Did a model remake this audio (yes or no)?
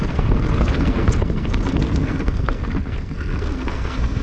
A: yes